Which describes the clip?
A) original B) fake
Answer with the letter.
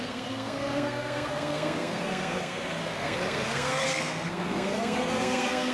B